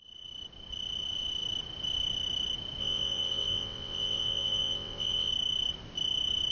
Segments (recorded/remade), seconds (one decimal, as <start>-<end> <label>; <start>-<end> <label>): 0.0-2.8 recorded; 2.8-5.3 remade; 5.3-6.5 recorded